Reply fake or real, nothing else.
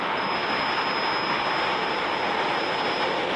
real